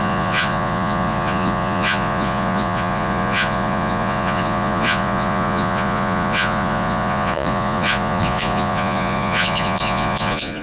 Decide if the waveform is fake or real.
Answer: fake